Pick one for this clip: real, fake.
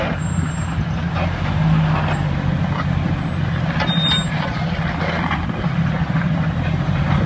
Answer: real